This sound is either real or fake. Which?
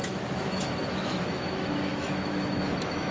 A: fake